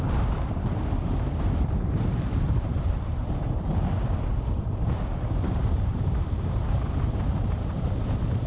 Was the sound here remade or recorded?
remade